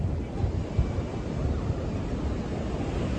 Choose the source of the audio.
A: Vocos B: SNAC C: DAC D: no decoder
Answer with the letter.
D